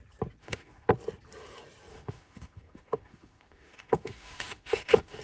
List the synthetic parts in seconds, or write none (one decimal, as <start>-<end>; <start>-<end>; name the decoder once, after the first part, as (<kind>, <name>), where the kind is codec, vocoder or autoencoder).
0.4-0.9 (autoencoder, DAC-VAE); 1.9-5.2